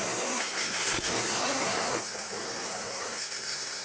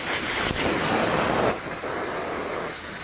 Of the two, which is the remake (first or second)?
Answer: first